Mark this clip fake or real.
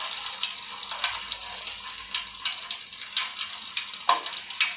real